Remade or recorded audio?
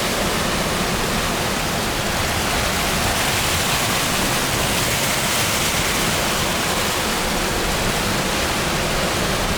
recorded